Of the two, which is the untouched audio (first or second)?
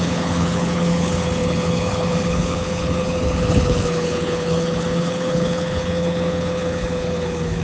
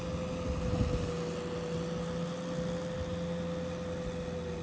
second